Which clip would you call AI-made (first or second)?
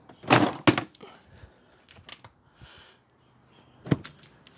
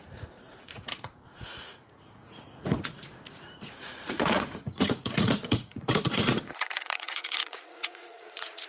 second